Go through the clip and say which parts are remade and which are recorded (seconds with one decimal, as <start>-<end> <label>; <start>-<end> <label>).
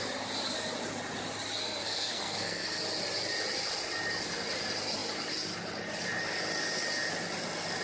0.0-1.6 recorded; 1.6-2.8 remade; 2.8-7.8 recorded